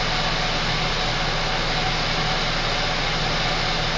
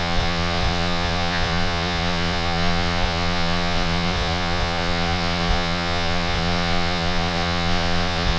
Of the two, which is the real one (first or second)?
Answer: first